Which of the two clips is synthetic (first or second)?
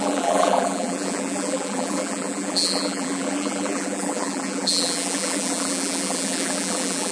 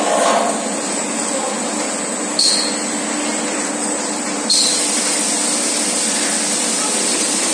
first